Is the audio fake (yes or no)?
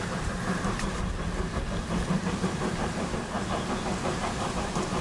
yes